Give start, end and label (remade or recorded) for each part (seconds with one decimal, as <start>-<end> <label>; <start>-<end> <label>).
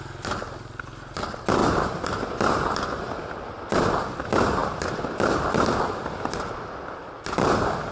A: 0.0-1.6 recorded; 1.6-3.9 remade; 3.9-4.6 recorded; 4.6-5.8 remade; 5.8-7.9 recorded